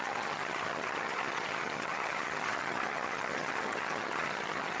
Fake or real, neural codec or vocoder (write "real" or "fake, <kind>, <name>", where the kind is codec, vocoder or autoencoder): fake, vocoder, HiFi-GAN